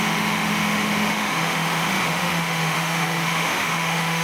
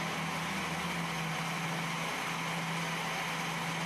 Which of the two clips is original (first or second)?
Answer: second